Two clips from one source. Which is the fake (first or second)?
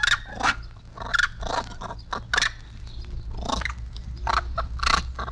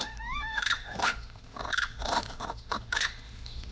second